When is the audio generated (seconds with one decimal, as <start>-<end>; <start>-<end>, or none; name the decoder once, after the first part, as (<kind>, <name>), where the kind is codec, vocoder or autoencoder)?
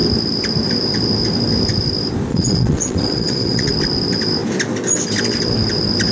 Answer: 2.3-3.7 (vocoder, WaveNeXt)